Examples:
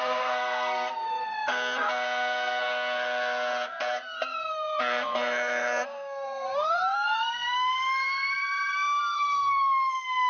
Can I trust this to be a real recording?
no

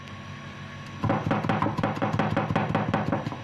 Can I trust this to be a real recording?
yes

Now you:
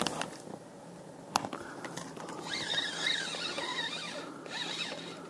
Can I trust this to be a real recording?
yes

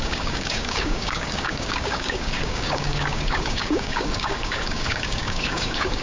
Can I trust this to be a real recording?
no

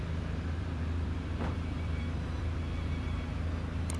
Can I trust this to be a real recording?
no